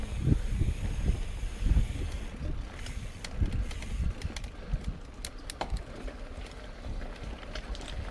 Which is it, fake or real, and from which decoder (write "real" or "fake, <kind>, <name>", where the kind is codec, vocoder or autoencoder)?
real